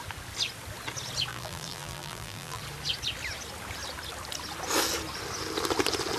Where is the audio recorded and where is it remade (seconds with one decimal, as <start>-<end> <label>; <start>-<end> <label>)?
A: 0.0-1.3 recorded; 1.3-2.6 remade; 2.6-6.2 recorded